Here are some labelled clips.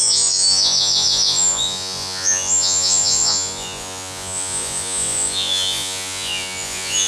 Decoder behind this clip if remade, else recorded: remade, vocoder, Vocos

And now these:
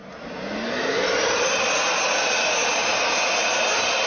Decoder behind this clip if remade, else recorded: recorded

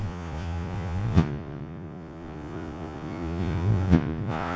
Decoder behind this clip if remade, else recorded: remade, vocoder, Vocos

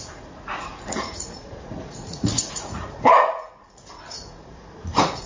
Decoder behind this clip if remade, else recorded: remade, vocoder, Vocos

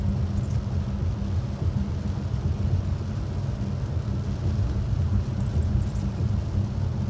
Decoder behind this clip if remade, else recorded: recorded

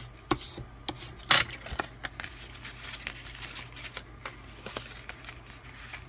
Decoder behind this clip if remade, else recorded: recorded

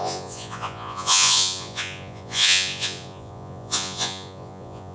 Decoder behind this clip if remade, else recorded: remade, vocoder, Vocos